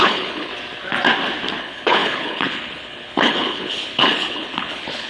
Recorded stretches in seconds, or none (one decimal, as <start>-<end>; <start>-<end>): 0.5-1.6